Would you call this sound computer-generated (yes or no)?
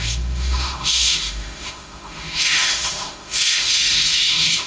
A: yes